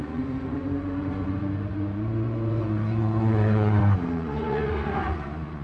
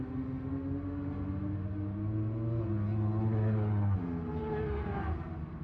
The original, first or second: second